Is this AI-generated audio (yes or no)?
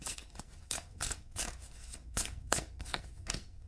yes